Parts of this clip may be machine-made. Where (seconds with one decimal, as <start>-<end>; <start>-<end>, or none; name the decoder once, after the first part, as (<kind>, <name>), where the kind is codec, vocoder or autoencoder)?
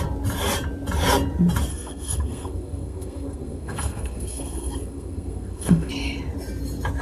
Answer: 1.7-5.9 (codec, SNAC)